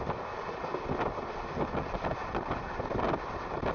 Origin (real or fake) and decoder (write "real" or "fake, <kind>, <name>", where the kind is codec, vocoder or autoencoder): real